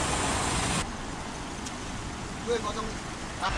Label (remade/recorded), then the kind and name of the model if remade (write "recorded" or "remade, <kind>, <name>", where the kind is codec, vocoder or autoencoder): remade, vocoder, Vocos